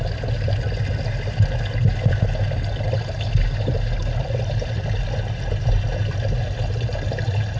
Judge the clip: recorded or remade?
recorded